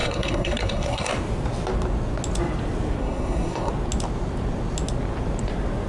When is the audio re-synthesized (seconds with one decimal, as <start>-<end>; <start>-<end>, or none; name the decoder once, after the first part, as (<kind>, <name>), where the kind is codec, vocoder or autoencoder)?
0.0-1.1 (codec, SNAC); 3.0-3.7